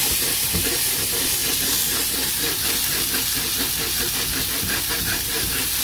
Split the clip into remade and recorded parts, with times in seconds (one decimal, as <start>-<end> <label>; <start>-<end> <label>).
0.0-5.8 recorded